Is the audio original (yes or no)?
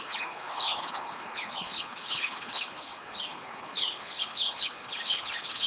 no